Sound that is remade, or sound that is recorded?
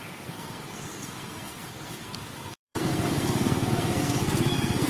remade